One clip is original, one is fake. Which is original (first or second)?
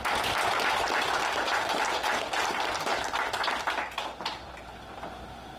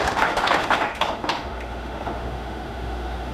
first